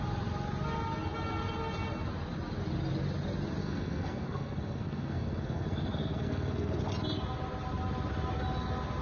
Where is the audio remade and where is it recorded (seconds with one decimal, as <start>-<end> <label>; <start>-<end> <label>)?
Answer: 0.0-3.6 recorded; 3.6-6.8 remade; 6.8-9.0 recorded